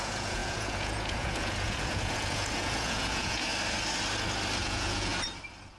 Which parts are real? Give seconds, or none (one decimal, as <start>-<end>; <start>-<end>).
3.5-4.6; 5.1-5.8